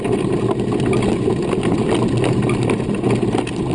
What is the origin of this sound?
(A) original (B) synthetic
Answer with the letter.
A